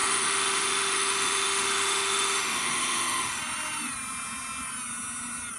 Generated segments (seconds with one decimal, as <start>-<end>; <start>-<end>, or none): 0.0-3.4

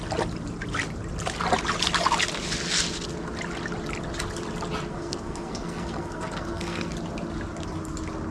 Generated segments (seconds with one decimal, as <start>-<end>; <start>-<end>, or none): 4.9-6.9

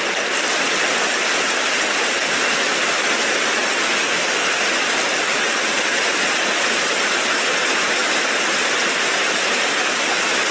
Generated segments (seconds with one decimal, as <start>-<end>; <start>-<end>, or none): none

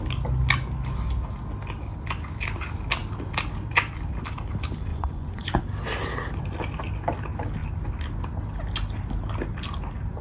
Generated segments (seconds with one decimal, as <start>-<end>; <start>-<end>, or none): 4.9-5.6

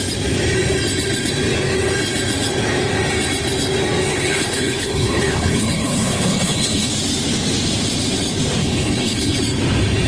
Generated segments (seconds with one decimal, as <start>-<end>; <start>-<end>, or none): 4.1-6.9; 8.6-9.4

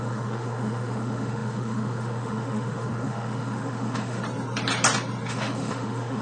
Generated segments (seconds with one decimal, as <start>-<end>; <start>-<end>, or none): 0.0-4.2; 5.3-6.2

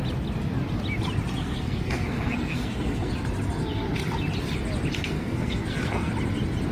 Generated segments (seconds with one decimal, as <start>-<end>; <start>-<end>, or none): 1.4-3.1; 5.0-6.1